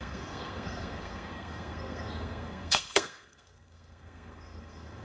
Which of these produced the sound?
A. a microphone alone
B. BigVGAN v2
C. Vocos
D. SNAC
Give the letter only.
D